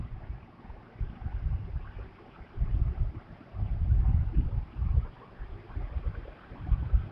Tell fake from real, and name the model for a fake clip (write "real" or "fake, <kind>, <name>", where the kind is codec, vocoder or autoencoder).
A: real